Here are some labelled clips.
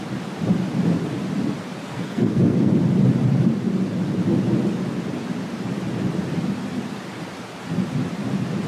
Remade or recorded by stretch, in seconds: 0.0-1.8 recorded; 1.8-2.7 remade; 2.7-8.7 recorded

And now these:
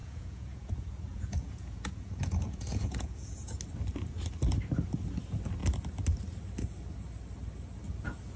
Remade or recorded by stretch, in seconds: 0.0-3.6 remade; 3.6-8.4 recorded

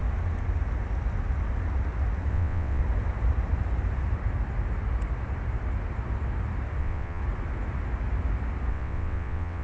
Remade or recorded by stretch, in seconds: 0.0-2.3 recorded; 2.3-2.8 remade; 2.8-6.8 recorded; 6.8-7.2 remade; 7.2-8.7 recorded; 8.7-9.6 remade

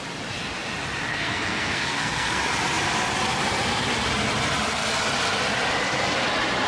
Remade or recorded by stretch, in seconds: 0.0-1.1 recorded; 1.1-2.4 remade; 2.4-6.7 recorded

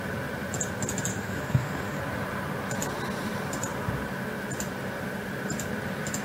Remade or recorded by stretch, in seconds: 0.0-1.1 recorded; 1.1-2.0 remade; 2.0-6.2 recorded

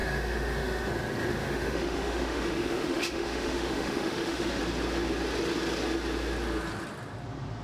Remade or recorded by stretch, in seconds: 0.0-0.9 remade; 0.9-1.3 recorded; 1.3-4.6 remade; 4.6-7.6 recorded

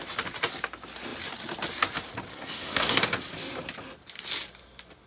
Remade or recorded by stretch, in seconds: 0.0-2.3 recorded; 2.3-3.0 remade; 3.0-5.1 recorded

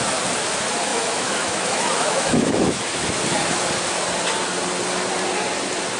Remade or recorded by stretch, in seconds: 0.0-0.9 recorded; 0.9-3.2 remade; 3.2-6.0 recorded